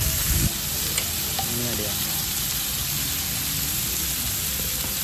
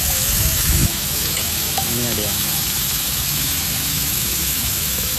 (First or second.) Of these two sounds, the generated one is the second